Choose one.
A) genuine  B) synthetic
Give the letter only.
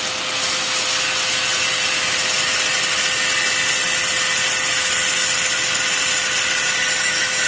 A